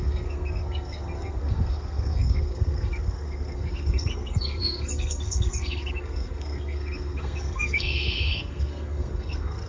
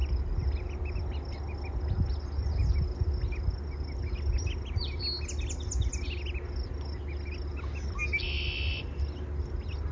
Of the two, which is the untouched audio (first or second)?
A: second